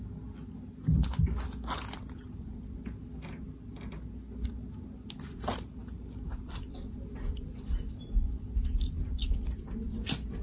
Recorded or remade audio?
recorded